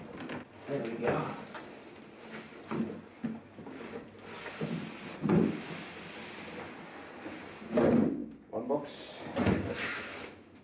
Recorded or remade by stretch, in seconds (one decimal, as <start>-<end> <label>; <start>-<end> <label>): 0.0-9.9 recorded; 9.9-10.6 remade